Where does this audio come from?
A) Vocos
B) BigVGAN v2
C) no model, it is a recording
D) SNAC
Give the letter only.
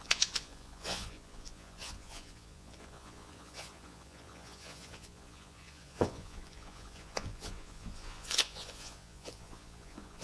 A